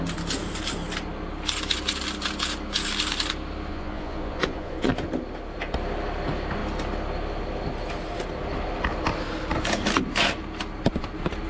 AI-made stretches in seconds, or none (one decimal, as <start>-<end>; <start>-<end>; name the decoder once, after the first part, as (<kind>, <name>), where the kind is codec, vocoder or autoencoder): 3.7-4.9 (vocoder, Vocos)